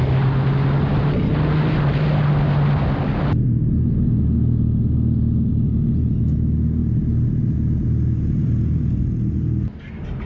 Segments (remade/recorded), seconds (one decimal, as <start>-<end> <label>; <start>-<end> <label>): 0.0-10.3 recorded

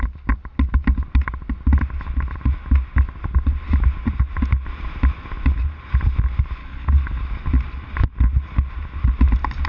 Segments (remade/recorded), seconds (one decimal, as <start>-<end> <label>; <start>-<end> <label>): 0.0-6.6 recorded; 6.6-7.2 remade; 7.2-9.7 recorded

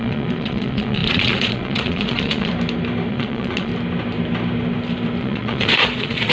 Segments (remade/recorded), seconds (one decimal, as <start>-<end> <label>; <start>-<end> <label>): 0.0-2.5 remade; 2.5-3.1 recorded; 3.1-3.7 remade; 3.7-5.2 recorded; 5.2-6.3 remade

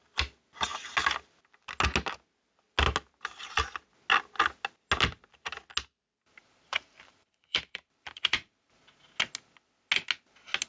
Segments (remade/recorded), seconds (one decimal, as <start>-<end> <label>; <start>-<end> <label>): 0.0-6.4 recorded; 6.4-8.8 remade; 8.8-10.7 recorded

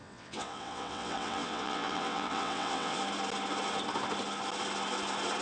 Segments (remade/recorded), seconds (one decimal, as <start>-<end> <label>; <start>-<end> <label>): 0.0-3.0 remade; 3.0-5.4 recorded